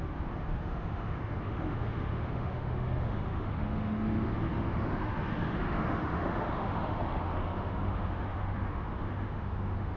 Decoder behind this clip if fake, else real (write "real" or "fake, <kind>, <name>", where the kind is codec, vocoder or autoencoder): fake, autoencoder, DAC-VAE